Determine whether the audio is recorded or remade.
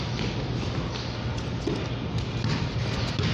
recorded